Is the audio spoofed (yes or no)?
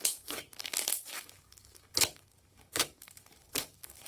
yes